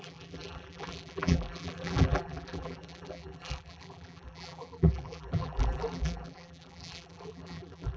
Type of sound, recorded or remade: remade